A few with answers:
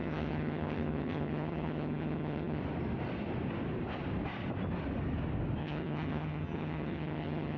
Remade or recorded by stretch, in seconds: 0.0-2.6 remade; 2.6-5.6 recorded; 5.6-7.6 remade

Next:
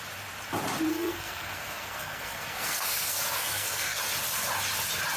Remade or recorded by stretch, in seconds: 0.0-0.9 recorded; 0.9-4.0 remade; 4.0-5.2 recorded

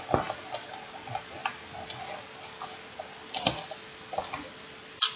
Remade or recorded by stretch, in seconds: 0.0-5.2 recorded

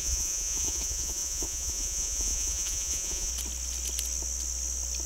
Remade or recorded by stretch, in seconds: 0.0-3.3 remade; 3.3-5.1 recorded

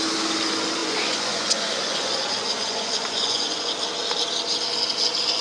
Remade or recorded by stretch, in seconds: 0.0-0.8 recorded; 0.8-3.7 remade; 3.7-5.4 recorded